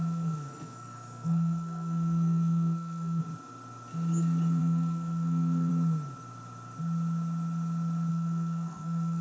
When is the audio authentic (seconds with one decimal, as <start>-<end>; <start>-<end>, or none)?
3.2-4.6; 5.7-8.1